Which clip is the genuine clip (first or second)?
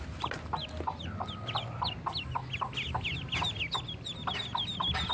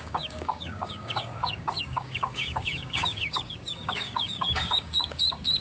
first